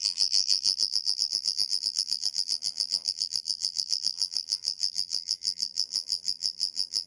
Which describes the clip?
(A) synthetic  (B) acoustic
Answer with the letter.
A